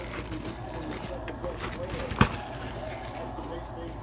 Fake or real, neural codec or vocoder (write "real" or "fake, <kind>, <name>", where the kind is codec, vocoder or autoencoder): real